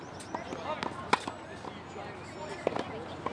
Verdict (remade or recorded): recorded